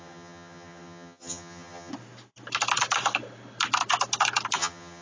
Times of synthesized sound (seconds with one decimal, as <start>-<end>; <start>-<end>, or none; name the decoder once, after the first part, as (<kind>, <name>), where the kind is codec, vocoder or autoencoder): 0.0-1.9 (vocoder, HiFi-GAN); 4.6-5.0